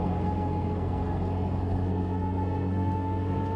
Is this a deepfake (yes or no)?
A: yes